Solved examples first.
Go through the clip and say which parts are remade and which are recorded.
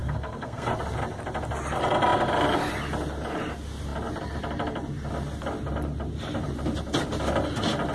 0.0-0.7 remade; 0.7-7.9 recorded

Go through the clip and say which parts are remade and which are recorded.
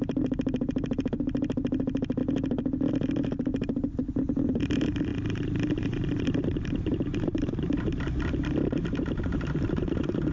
0.0-2.2 remade; 2.2-2.9 recorded; 2.9-10.3 remade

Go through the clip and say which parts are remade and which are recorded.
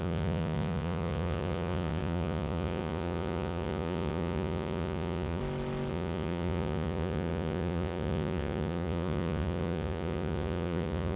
0.0-5.4 remade; 5.4-5.9 recorded; 5.9-11.2 remade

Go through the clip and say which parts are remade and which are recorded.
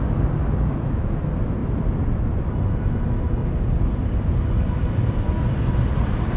0.0-1.6 recorded; 1.6-2.1 remade; 2.1-3.4 recorded; 3.4-6.4 remade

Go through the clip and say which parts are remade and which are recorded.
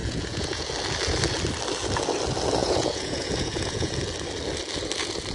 0.0-0.7 remade; 0.7-2.6 recorded; 2.6-3.9 remade; 3.9-5.3 recorded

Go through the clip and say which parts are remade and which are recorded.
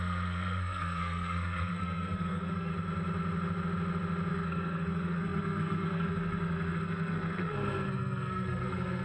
0.0-2.7 remade; 2.7-4.3 recorded; 4.3-9.0 remade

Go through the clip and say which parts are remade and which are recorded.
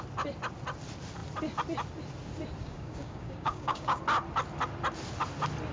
0.0-2.6 recorded; 2.6-4.0 remade; 4.0-5.7 recorded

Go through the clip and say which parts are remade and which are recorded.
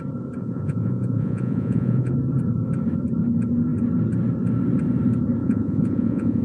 0.0-0.4 recorded; 0.4-2.1 remade; 2.1-5.4 recorded; 5.4-6.4 remade